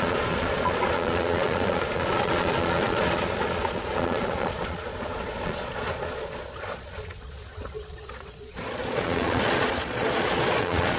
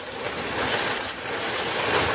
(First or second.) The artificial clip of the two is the first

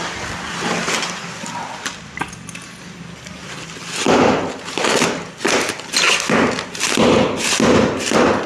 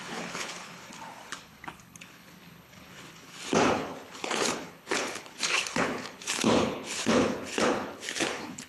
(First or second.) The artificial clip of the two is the second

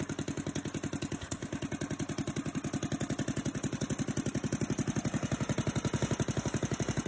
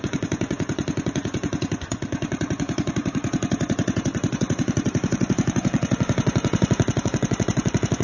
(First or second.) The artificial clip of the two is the second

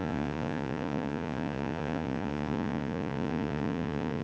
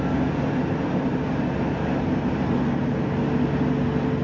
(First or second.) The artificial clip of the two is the first